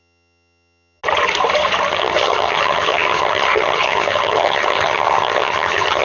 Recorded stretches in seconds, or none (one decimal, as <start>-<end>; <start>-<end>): 1.0-1.9